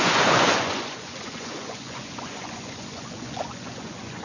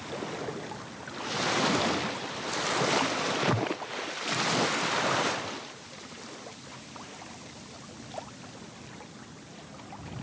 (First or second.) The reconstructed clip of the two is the first